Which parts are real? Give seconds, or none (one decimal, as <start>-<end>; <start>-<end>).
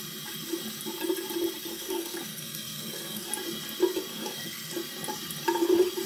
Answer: 0.0-1.7; 3.3-4.1; 4.7-6.1